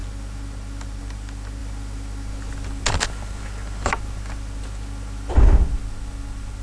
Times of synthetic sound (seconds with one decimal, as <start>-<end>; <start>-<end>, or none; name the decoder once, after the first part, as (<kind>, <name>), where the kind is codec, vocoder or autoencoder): none